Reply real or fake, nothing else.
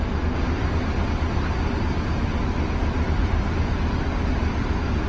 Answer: real